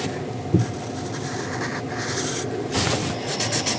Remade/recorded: recorded